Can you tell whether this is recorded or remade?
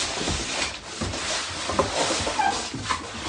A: recorded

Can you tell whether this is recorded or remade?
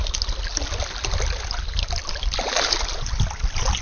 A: recorded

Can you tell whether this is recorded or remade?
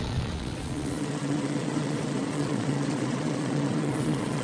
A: remade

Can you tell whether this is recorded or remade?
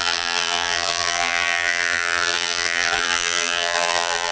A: remade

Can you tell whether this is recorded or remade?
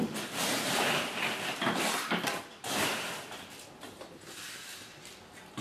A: remade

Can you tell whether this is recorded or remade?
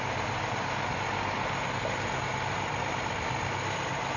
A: recorded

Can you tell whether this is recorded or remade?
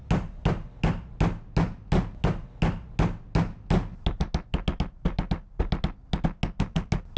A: recorded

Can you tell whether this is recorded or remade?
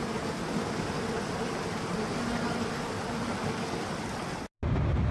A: recorded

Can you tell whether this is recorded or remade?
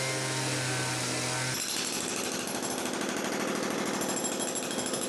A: recorded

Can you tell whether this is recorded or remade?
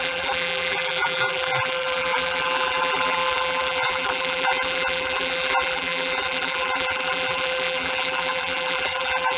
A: remade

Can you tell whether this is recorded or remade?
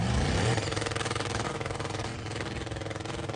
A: remade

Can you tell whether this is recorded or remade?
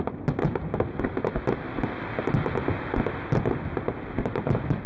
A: recorded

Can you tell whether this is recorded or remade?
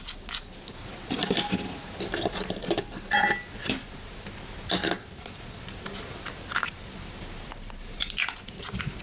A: recorded